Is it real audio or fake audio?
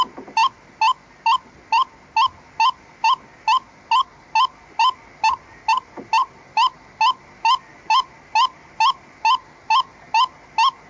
real